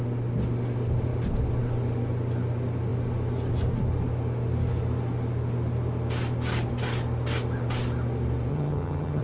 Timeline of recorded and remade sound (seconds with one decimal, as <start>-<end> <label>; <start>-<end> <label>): 0.0-8.5 recorded; 8.5-9.2 remade